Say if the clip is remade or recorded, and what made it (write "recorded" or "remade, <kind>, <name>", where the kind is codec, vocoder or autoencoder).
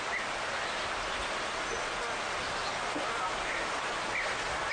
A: recorded